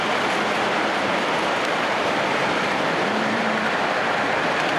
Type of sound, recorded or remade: remade